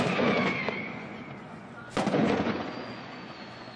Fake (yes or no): yes